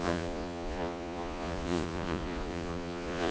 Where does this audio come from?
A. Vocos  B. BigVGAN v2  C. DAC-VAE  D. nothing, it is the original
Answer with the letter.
A